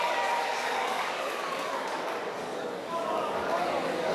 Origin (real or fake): fake